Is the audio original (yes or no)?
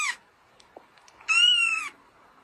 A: no